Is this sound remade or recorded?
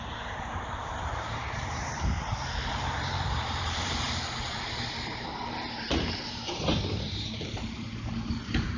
remade